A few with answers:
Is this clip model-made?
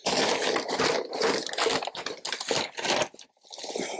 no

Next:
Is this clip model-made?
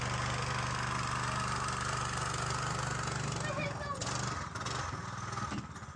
no